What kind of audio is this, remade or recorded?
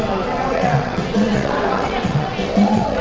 remade